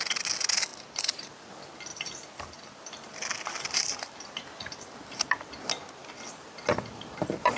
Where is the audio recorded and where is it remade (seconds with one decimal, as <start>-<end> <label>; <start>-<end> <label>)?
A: 0.0-0.7 recorded; 0.7-1.5 remade; 1.5-1.9 recorded; 1.9-5.5 remade; 5.5-6.0 recorded; 6.0-7.6 remade